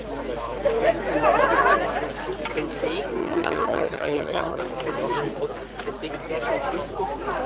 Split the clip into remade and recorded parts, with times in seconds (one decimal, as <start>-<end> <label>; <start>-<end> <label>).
0.0-3.2 recorded; 3.2-4.6 remade; 4.6-7.5 recorded